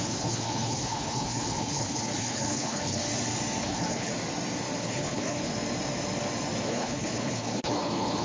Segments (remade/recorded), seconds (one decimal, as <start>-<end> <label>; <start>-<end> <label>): 0.0-3.0 remade; 3.0-3.6 recorded; 3.6-4.1 remade; 4.1-4.8 recorded; 4.8-5.5 remade; 5.5-6.7 recorded; 6.7-8.2 remade

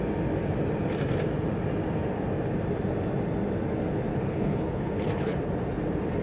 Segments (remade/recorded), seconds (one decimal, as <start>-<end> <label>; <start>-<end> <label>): 0.0-4.1 recorded; 4.1-5.4 remade; 5.4-6.2 recorded

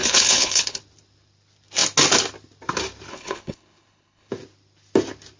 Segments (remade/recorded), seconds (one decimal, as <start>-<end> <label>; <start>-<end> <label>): 0.0-0.8 remade; 0.8-3.1 recorded; 3.1-4.3 remade; 4.3-5.4 recorded

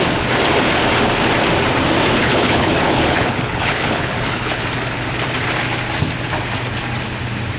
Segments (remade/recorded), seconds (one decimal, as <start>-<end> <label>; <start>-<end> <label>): 0.0-2.2 recorded; 2.2-4.6 remade; 4.6-7.6 recorded